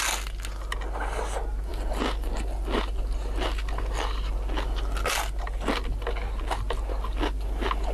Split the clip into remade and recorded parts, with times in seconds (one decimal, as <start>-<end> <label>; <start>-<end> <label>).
0.0-7.9 recorded